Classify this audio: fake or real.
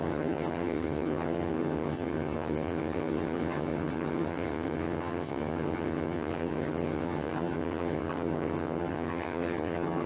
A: fake